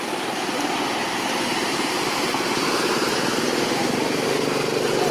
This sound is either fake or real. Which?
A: fake